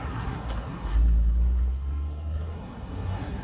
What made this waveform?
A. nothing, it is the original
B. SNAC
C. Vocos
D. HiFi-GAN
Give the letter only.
B